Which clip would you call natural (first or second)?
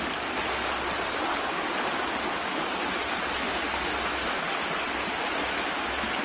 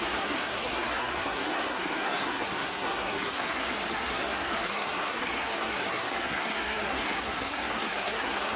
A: first